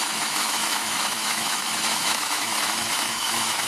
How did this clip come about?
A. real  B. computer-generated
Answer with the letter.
B